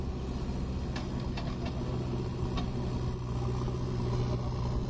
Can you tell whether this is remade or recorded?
recorded